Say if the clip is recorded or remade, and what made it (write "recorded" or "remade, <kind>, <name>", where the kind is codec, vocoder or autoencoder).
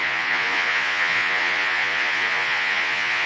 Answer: remade, vocoder, Vocos